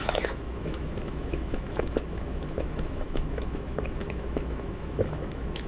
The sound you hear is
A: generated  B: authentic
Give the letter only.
A